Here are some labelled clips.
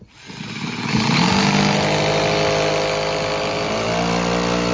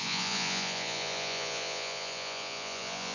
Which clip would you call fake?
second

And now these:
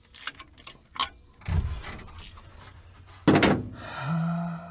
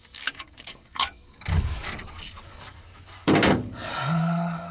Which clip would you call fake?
second